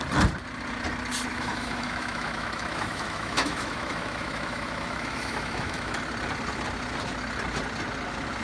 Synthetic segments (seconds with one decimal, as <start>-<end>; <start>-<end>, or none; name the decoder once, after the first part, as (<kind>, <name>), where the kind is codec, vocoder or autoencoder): 1.3-6.0 (autoencoder, DAC-VAE)

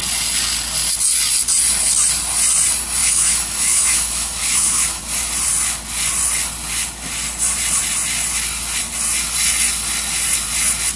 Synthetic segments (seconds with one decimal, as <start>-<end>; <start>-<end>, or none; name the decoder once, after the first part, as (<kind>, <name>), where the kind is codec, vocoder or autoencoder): 3.0-5.0 (autoencoder, DAC-VAE)

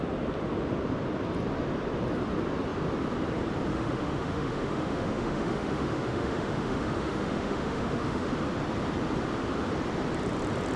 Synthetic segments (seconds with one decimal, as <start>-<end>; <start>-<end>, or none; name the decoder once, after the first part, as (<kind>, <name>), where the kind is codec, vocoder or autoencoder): 3.7-8.3 (autoencoder, DAC-VAE)

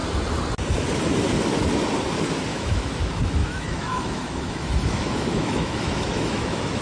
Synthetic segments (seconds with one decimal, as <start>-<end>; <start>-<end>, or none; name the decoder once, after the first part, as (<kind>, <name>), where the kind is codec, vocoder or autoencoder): 2.5-3.0 (autoencoder, DAC-VAE); 3.4-6.8